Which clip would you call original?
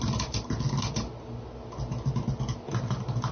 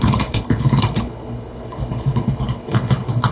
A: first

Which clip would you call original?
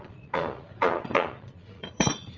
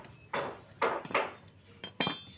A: second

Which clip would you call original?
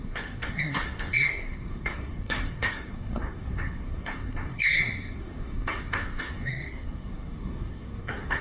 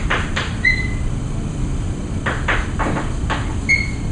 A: second